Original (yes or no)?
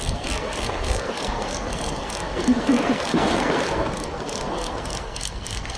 no